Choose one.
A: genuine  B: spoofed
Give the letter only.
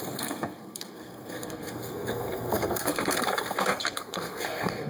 B